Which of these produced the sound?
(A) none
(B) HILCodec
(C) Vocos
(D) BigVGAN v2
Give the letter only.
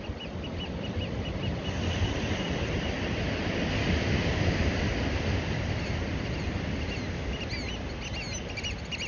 A